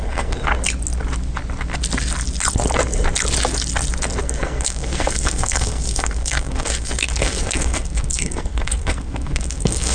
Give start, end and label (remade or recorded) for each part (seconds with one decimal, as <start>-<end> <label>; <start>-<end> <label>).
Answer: 0.0-0.4 remade; 0.4-4.2 recorded; 4.2-9.9 remade